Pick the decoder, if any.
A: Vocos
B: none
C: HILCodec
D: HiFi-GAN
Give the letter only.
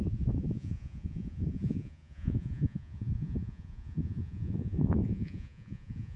A